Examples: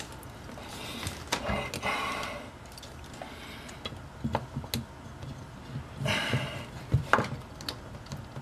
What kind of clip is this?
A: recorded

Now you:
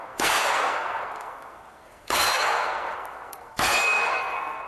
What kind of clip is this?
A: remade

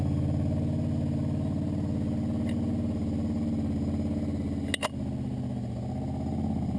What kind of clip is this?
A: recorded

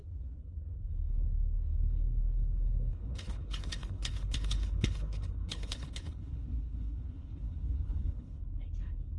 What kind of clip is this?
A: remade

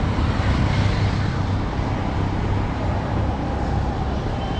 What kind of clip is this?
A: recorded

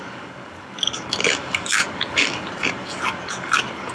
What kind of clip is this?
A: remade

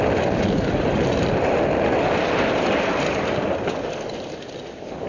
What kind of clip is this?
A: recorded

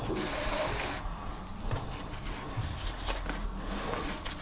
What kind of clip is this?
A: recorded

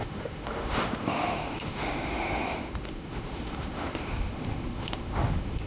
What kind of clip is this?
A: remade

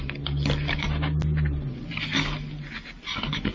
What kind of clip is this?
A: recorded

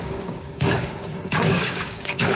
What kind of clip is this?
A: remade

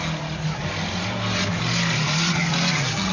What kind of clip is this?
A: recorded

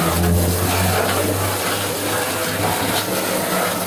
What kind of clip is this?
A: recorded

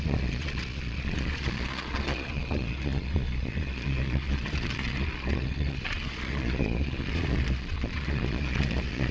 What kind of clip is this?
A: remade